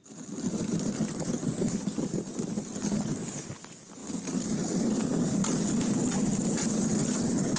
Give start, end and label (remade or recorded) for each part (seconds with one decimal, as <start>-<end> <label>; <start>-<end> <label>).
0.0-7.6 recorded